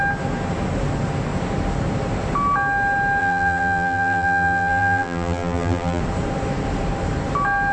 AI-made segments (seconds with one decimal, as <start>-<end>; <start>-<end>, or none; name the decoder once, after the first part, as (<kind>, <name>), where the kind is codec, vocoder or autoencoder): 3.2-6.0 (vocoder, BigVGAN v2)